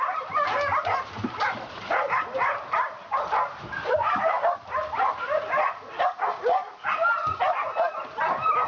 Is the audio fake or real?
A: real